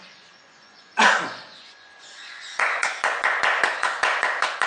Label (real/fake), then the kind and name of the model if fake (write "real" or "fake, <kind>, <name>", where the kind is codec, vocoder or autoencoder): fake, vocoder, Vocos